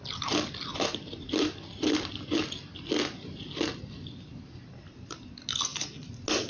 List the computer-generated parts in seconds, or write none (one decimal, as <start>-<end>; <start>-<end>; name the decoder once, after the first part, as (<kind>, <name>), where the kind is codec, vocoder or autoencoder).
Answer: none